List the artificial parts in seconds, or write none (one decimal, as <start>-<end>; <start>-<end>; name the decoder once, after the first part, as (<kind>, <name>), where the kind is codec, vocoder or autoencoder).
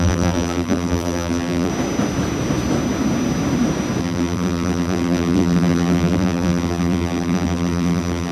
0.0-1.7 (vocoder, BigVGAN v2); 4.0-8.3